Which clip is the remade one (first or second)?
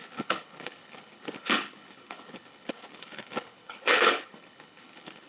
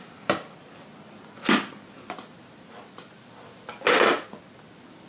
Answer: first